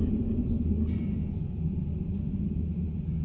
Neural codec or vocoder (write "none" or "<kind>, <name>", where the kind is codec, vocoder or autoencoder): none